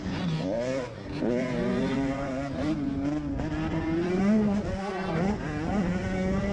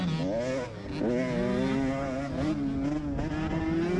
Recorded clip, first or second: second